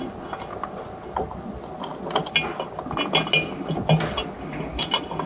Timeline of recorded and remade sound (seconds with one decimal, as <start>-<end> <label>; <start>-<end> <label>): 0.0-5.3 recorded